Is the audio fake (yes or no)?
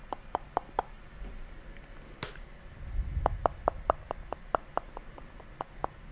no